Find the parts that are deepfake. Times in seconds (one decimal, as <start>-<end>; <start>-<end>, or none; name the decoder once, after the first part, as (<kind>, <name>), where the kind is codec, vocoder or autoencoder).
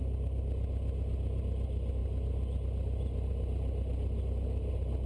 none